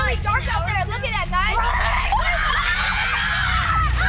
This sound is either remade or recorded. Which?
recorded